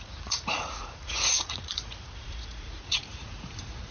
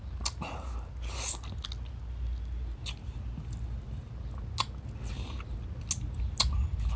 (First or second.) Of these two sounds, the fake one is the first